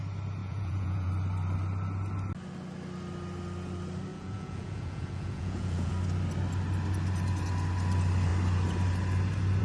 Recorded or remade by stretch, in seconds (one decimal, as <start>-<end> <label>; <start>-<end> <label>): 0.0-0.4 recorded; 0.4-1.1 remade; 1.1-4.1 recorded; 4.1-5.9 remade; 5.9-9.6 recorded